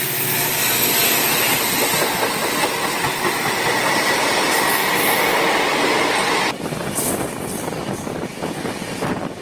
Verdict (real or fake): real